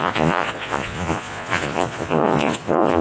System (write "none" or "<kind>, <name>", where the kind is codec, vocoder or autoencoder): vocoder, Vocos